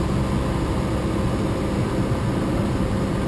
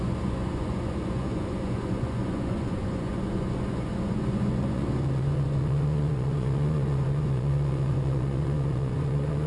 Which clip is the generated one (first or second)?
second